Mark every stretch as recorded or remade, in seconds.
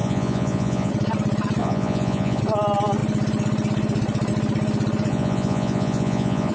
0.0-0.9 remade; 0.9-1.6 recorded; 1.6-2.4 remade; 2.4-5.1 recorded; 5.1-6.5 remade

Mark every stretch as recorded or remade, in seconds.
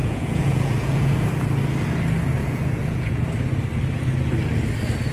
0.0-1.3 remade; 1.3-2.4 recorded; 2.4-3.2 remade; 3.2-5.1 recorded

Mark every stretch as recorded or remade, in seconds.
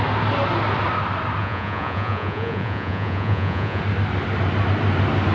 0.0-1.4 recorded; 1.4-3.8 remade; 3.8-5.3 recorded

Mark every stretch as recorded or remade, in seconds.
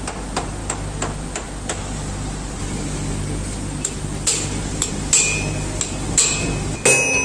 0.0-7.2 recorded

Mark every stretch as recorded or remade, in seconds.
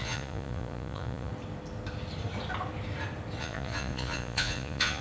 0.0-1.3 remade; 1.3-3.4 recorded; 3.4-5.0 remade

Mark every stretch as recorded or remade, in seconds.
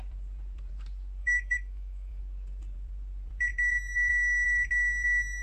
0.0-1.2 recorded; 1.2-2.2 remade; 2.2-5.4 recorded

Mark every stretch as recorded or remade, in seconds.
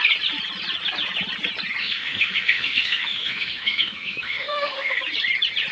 0.0-1.8 recorded; 1.8-5.0 remade; 5.0-5.7 recorded